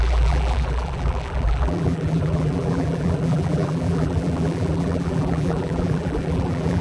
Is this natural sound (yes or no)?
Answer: no